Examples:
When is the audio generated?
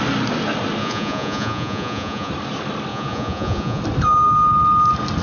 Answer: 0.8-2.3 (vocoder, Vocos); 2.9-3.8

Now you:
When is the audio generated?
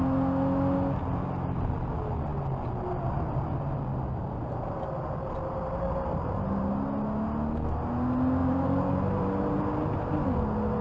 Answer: 3.9-4.8 (vocoder, BigVGAN v2); 8.4-9.6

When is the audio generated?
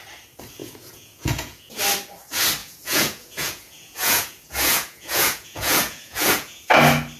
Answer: 0.6-1.8 (vocoder, Vocos); 2.6-6.6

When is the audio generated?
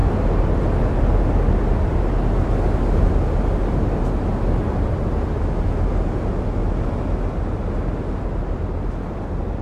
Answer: none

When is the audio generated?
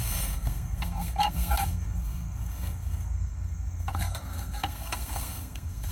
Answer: 0.0-5.9 (codec, SNAC)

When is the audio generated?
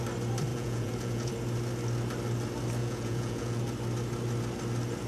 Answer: 0.5-1.3 (vocoder, Vocos); 2.8-3.6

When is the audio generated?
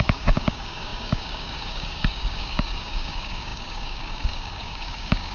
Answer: 0.0-5.3 (codec, DAC)